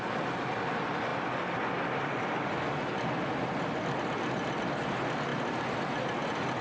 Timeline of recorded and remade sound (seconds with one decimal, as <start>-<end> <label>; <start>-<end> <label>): 0.0-6.6 recorded